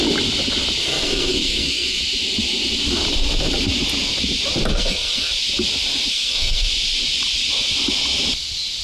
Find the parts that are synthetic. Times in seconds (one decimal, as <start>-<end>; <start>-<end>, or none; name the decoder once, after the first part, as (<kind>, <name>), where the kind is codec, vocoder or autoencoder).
0.8-2.0 (codec, SNAC); 4.7-5.3; 6.1-6.7